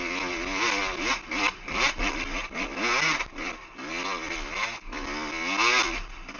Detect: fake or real real